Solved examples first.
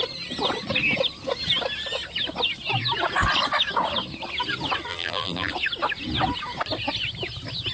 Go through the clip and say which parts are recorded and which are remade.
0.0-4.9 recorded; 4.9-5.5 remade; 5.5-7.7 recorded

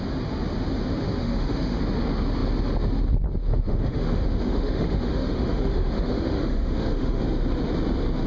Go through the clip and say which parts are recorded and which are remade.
0.0-1.2 recorded; 1.2-1.8 remade; 1.8-3.5 recorded; 3.5-7.2 remade; 7.2-8.3 recorded

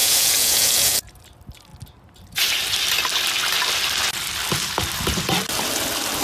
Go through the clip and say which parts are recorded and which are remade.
0.0-1.2 remade; 1.2-6.2 recorded

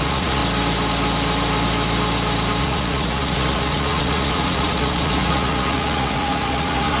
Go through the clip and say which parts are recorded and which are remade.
0.0-0.4 remade; 0.4-2.6 recorded; 2.6-7.0 remade